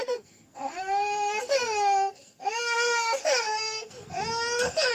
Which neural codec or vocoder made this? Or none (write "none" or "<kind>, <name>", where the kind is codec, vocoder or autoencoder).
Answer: codec, SNAC